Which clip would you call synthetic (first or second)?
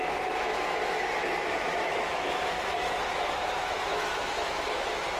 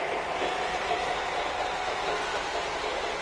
first